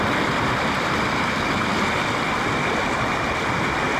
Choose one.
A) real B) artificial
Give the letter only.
A